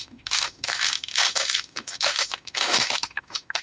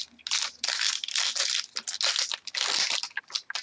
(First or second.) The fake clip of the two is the first